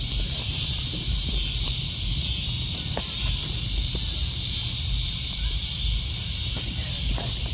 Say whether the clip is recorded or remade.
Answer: remade